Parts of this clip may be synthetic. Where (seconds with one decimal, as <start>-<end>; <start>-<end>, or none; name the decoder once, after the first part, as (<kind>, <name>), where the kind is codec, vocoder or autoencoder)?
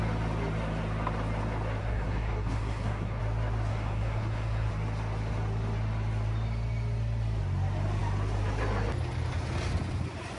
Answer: 1.8-3.2 (codec, SNAC); 3.7-4.7